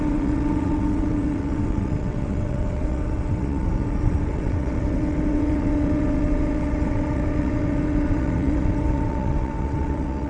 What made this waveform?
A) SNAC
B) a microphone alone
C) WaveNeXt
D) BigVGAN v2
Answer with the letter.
C